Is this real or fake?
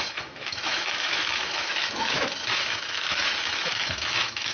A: fake